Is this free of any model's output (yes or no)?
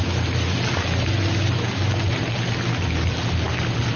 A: yes